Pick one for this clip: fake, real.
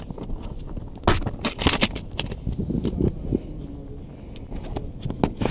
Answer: real